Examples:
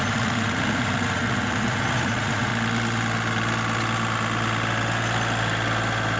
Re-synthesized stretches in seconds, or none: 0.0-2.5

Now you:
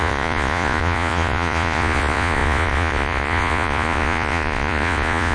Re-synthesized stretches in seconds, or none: 0.0-5.3

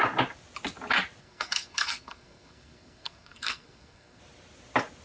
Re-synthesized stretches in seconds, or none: 1.2-4.2